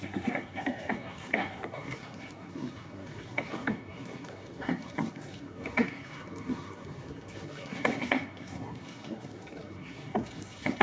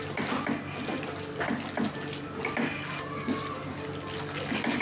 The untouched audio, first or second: second